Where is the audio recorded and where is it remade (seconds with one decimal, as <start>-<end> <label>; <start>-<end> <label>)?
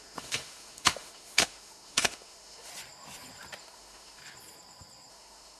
0.0-2.7 remade; 2.7-3.6 recorded; 3.6-4.2 remade; 4.2-5.1 recorded; 5.1-5.6 remade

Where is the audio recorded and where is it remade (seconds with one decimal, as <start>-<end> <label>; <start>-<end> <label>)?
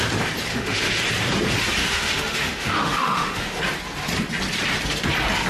0.0-0.5 recorded; 0.5-1.0 remade; 1.0-1.8 recorded; 1.8-3.6 remade; 3.6-5.5 recorded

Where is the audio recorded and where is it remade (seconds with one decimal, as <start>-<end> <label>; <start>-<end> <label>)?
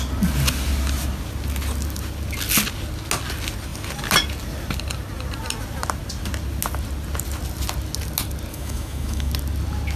0.0-8.5 recorded; 8.5-9.3 remade; 9.3-10.0 recorded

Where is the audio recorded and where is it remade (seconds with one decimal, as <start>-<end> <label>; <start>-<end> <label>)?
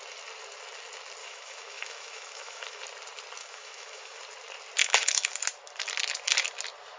0.0-1.2 recorded; 1.2-2.8 remade; 2.8-3.4 recorded; 3.4-4.2 remade; 4.2-4.8 recorded; 4.8-5.3 remade; 5.3-7.0 recorded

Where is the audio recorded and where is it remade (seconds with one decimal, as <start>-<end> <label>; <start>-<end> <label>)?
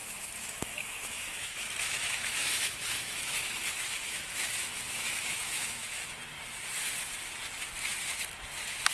0.0-6.0 remade; 6.0-8.9 recorded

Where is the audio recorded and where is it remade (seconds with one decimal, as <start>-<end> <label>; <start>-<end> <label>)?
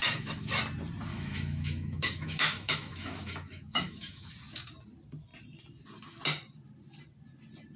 0.0-0.6 remade; 0.6-1.1 recorded; 1.1-4.3 remade; 4.3-7.8 recorded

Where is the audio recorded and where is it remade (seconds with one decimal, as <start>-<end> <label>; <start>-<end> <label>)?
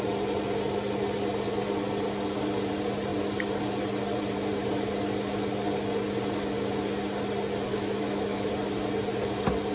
0.0-7.7 recorded; 7.7-8.5 remade; 8.5-9.7 recorded